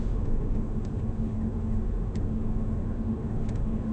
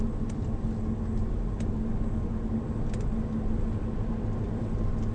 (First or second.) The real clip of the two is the second